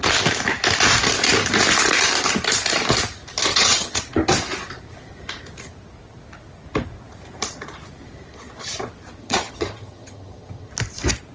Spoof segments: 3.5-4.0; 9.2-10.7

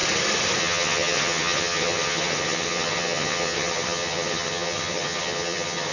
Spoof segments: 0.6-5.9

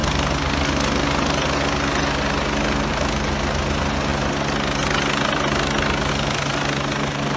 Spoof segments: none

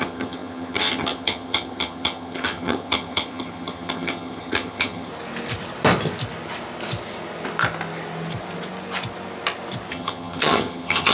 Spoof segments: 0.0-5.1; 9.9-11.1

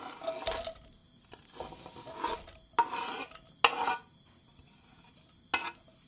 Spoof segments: none

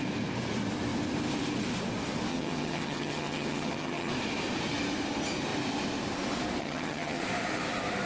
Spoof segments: 2.3-4.1; 6.6-7.2

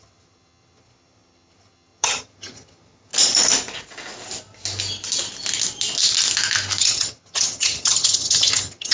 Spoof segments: 0.0-3.1; 6.8-8.9